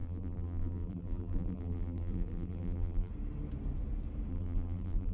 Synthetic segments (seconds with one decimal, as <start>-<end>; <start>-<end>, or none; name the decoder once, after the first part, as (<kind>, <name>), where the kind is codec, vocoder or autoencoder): 0.0-3.1 (vocoder, BigVGAN v2); 4.3-5.1